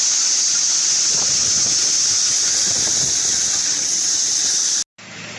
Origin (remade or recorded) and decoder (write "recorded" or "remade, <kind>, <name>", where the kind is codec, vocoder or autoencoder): recorded